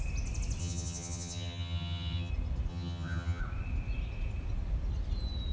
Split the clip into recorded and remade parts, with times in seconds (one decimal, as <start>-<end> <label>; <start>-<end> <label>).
0.0-0.6 recorded; 0.6-2.3 remade; 2.3-2.7 recorded; 2.7-3.4 remade; 3.4-5.5 recorded